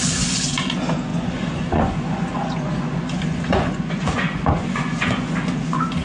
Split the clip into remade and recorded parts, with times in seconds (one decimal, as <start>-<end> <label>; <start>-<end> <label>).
0.0-6.0 remade